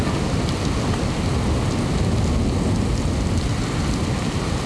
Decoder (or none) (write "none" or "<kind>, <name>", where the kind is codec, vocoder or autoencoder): none